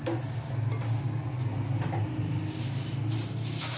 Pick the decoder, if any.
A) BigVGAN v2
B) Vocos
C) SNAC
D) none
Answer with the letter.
D